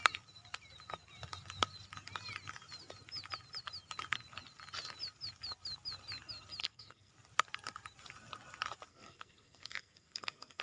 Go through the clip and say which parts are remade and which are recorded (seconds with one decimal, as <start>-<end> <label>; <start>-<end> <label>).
0.0-6.6 recorded; 6.6-7.1 remade; 7.1-8.9 recorded; 8.9-10.6 remade